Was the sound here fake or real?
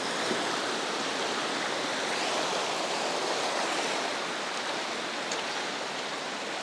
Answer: real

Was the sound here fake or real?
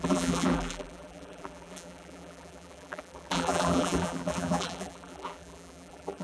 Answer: fake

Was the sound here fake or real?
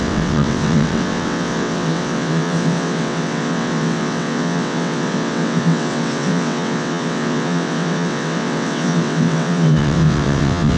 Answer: fake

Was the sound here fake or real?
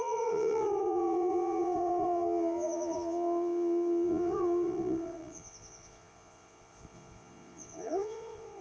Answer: fake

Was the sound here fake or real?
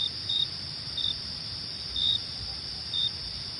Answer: fake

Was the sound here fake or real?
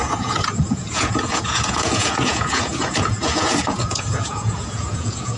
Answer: fake